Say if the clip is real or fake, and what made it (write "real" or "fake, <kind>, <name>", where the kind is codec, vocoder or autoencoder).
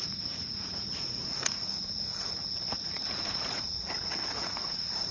fake, vocoder, Vocos